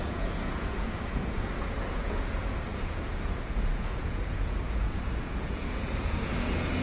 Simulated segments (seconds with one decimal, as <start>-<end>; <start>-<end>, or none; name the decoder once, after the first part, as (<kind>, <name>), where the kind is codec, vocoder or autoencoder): 0.0-6.8 (vocoder, Vocos)